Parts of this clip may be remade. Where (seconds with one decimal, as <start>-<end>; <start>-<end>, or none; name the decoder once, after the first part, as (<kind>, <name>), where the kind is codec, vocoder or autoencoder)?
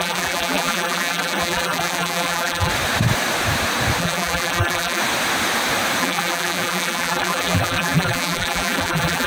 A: 0.0-2.7 (vocoder, BigVGAN v2); 4.0-5.0; 6.0-9.3